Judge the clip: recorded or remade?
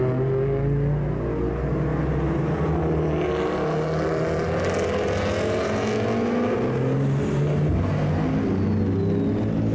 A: recorded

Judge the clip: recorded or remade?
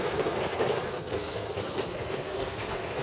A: remade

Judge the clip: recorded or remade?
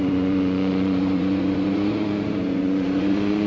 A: remade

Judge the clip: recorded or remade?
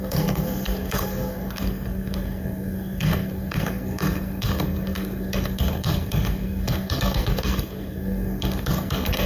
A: remade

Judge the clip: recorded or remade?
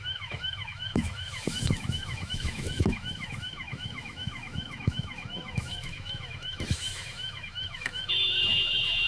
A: remade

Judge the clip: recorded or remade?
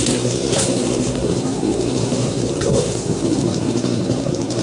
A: remade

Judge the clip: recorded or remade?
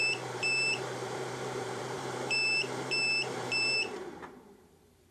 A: remade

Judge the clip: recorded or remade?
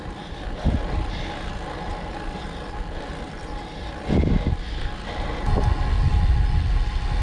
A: recorded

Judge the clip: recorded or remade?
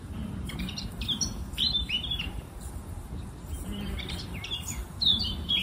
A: remade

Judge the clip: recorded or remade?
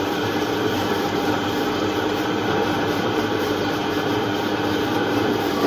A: remade